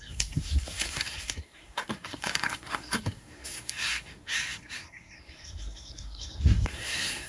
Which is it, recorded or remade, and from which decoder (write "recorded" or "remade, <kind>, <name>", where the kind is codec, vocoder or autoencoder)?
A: remade, codec, SNAC